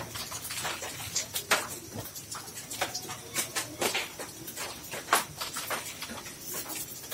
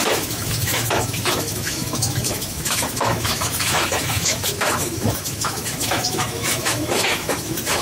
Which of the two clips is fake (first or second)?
second